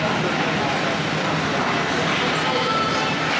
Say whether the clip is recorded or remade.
recorded